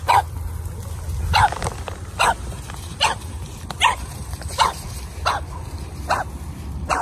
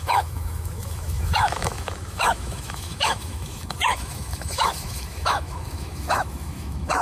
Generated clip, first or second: second